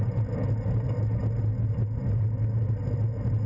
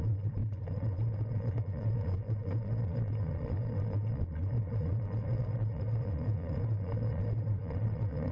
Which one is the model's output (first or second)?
second